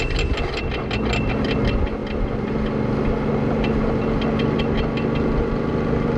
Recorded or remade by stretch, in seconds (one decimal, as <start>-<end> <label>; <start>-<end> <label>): 0.0-6.2 recorded